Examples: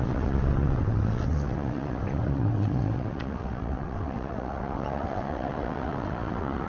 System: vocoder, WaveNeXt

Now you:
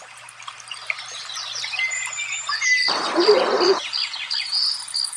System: none